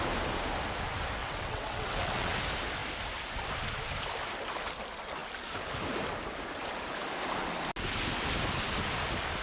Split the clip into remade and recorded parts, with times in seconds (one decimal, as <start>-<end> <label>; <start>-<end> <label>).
0.0-1.2 recorded; 1.2-2.4 remade; 2.4-9.4 recorded